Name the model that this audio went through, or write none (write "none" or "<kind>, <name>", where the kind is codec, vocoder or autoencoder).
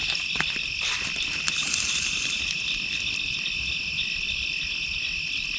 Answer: none